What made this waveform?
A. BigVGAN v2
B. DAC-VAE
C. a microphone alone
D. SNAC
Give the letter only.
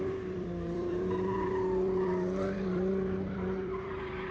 A